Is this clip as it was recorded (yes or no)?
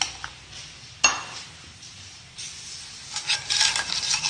yes